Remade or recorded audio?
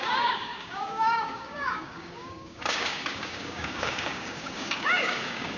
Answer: remade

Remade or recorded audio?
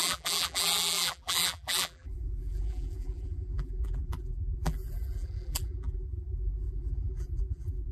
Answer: remade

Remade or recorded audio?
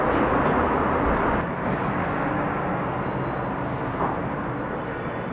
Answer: recorded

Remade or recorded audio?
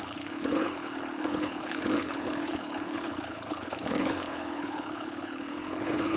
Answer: remade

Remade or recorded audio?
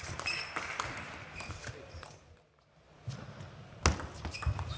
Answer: recorded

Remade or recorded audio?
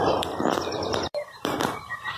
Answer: remade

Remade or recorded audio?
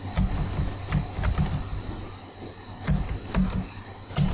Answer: recorded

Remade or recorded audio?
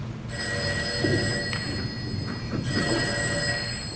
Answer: recorded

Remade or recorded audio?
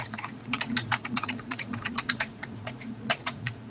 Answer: remade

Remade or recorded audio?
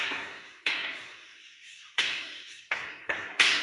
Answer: remade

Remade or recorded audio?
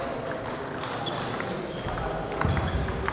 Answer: recorded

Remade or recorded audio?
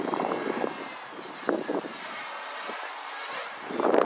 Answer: remade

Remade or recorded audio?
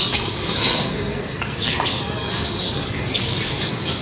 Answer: remade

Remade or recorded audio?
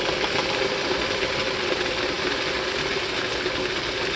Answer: recorded